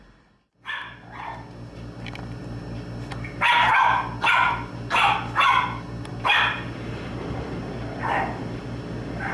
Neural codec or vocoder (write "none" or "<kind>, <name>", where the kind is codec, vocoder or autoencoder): none